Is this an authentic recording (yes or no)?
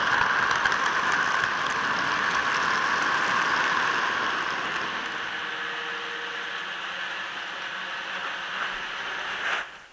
yes